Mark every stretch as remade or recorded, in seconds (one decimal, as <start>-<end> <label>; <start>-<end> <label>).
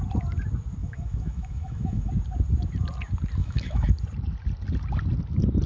0.0-0.8 recorded; 0.8-2.1 remade; 2.1-3.4 recorded; 3.4-3.9 remade; 3.9-5.7 recorded